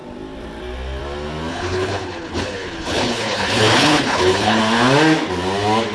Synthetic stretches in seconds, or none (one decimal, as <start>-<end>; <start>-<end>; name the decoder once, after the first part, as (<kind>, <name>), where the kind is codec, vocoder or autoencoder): 1.5-4.6 (codec, HILCodec)